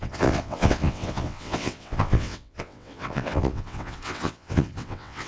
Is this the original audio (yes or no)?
no